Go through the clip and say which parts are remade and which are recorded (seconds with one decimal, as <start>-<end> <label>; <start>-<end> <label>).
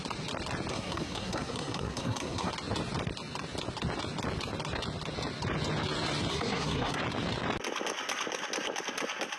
0.0-0.7 recorded; 0.7-2.5 remade; 2.5-6.3 recorded; 6.3-7.0 remade; 7.0-9.4 recorded